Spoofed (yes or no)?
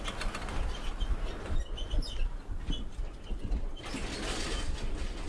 no